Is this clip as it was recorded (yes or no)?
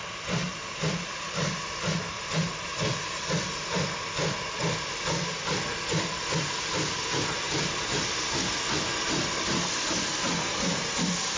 yes